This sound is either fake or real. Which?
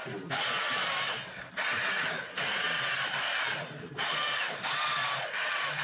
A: real